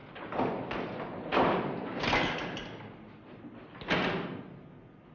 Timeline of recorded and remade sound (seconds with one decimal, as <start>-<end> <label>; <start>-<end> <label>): 0.0-5.1 recorded